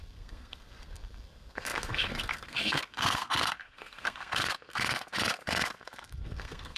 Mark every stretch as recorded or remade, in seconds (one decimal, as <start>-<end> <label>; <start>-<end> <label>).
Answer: 0.0-6.8 remade